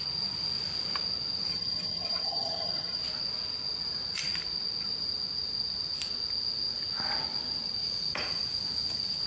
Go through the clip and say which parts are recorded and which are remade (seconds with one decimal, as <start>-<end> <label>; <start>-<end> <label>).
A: 0.0-1.5 recorded; 1.5-3.0 remade; 3.0-9.3 recorded